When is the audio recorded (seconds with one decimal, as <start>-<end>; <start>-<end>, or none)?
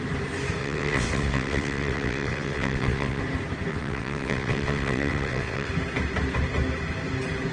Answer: 0.0-0.6; 3.2-3.7; 5.7-7.5